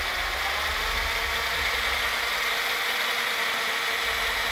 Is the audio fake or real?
real